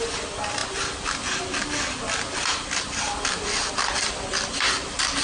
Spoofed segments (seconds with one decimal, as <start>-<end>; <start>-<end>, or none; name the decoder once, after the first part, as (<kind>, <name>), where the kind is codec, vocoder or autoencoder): none